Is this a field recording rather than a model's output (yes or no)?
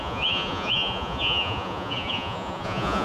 no